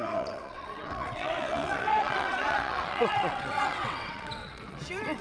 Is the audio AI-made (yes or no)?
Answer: yes